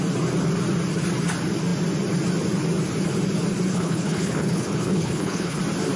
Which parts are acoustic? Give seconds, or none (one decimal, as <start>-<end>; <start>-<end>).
0.0-3.7; 5.6-6.0